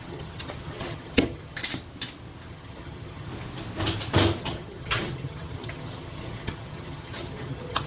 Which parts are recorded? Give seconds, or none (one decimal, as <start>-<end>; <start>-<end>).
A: 1.6-2.5; 3.3-4.4